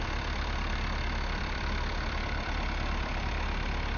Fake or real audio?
fake